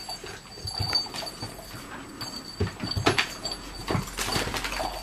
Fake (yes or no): no